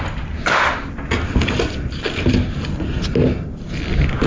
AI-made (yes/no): no